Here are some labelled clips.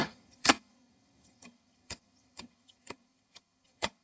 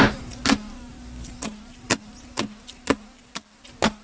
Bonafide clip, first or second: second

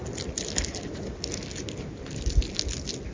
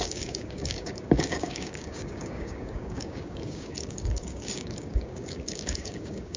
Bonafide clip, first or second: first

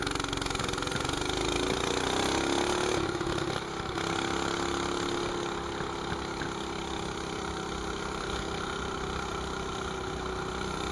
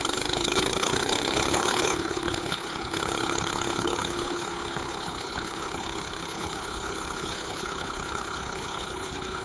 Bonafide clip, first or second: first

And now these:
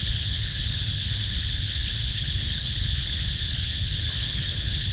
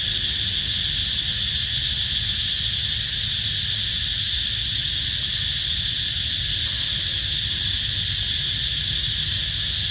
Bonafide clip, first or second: second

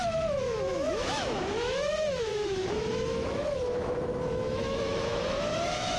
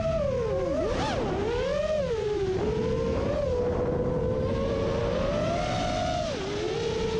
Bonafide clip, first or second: second